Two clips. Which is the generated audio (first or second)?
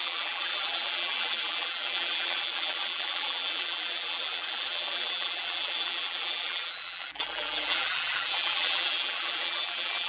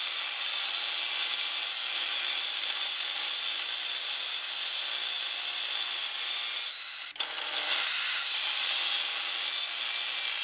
first